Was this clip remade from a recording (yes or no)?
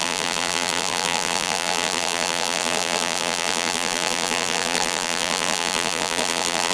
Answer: yes